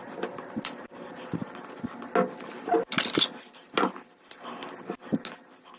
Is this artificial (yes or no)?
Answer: no